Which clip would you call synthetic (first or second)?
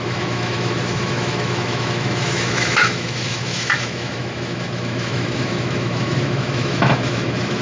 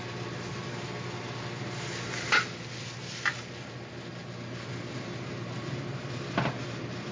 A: first